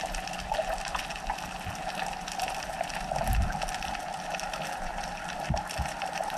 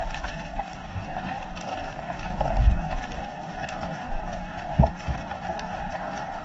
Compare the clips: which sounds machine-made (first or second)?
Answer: second